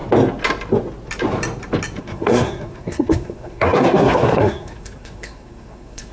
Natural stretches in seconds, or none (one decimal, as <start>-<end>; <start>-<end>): 0.0-2.0